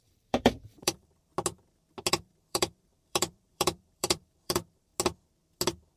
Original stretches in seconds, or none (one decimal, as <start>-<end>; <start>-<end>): 1.3-2.1; 4.9-6.0